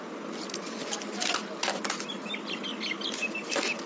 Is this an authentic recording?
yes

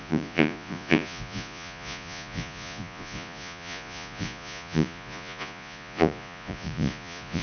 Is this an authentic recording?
no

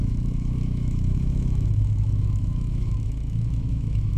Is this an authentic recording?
no